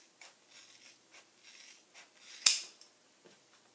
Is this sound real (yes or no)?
yes